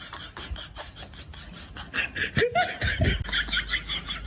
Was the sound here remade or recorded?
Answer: recorded